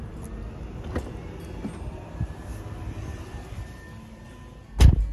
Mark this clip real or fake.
real